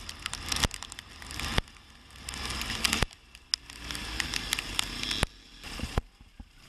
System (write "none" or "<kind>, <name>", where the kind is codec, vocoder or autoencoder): none